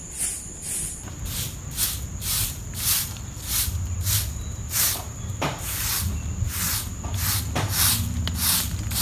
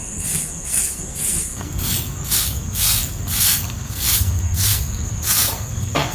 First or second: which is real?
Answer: first